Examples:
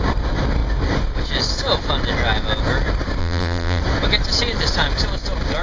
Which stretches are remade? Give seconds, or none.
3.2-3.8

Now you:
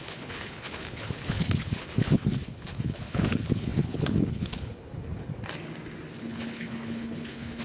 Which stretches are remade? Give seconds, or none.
0.0-5.3; 6.2-7.6

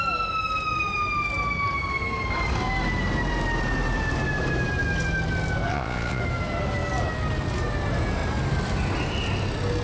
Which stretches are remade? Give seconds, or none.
5.7-6.2

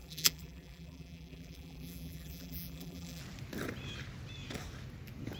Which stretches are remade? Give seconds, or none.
0.0-3.2